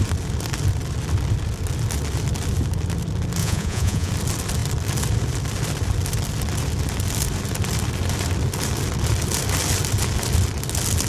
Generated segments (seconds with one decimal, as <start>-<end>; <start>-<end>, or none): 3.4-4.1